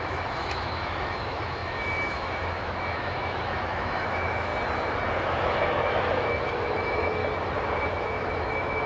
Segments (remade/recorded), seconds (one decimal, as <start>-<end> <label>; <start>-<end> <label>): 0.0-4.5 remade; 4.5-5.2 recorded; 5.2-7.2 remade; 7.2-7.8 recorded; 7.8-8.9 remade